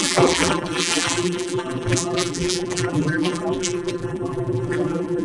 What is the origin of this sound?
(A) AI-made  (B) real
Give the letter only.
A